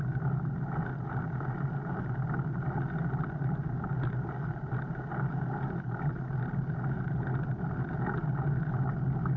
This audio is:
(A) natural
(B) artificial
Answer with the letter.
A